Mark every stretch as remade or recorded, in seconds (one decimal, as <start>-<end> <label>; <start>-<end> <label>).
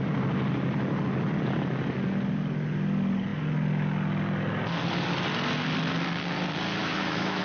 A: 0.0-6.8 recorded; 6.8-7.4 remade